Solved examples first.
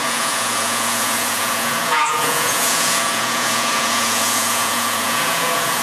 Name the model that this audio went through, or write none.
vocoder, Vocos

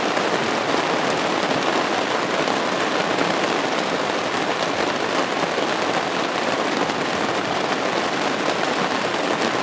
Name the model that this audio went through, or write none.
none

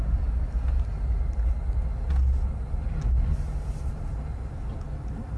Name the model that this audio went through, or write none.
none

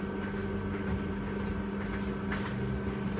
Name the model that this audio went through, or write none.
none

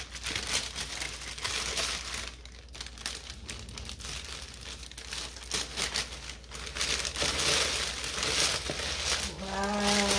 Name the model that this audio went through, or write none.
none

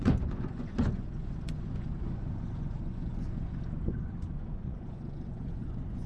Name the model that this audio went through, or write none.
vocoder, Vocos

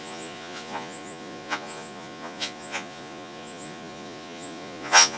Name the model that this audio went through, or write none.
vocoder, Vocos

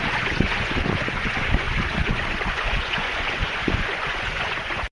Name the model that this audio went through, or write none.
vocoder, Vocos